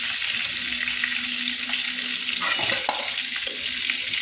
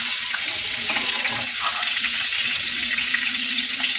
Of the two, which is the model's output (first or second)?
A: second